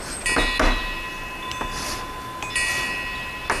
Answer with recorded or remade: recorded